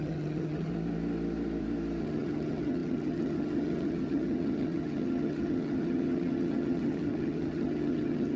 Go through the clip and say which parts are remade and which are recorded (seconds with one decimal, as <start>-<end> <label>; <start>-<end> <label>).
0.0-0.7 remade; 0.7-2.0 recorded; 2.0-8.4 remade